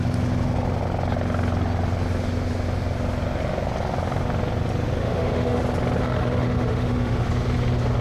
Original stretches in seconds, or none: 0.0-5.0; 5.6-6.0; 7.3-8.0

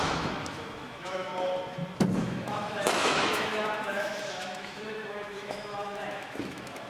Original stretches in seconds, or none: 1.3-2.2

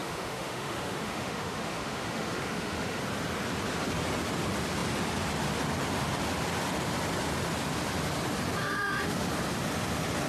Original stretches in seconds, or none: 3.0-8.6; 9.3-10.3

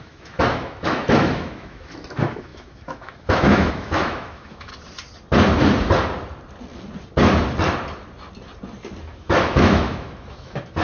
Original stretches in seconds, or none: 4.7-9.0

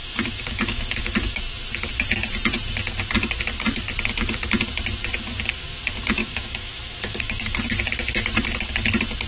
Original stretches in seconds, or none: 1.4-6.2; 7.6-9.3

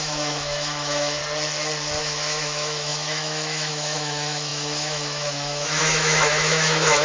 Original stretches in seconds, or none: 1.2-2.0

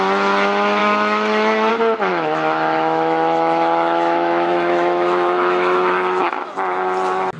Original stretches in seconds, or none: 0.0-0.8; 1.7-2.1; 6.5-7.4